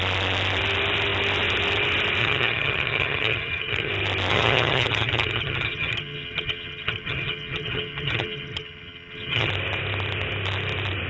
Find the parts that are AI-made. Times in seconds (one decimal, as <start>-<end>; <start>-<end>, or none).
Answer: 2.2-3.9; 4.3-9.5